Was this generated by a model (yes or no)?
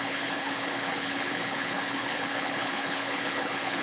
yes